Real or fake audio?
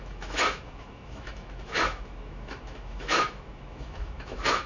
fake